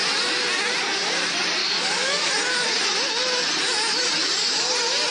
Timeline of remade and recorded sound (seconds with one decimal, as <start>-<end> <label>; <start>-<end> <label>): 0.0-1.6 recorded; 1.6-2.3 remade; 2.3-5.1 recorded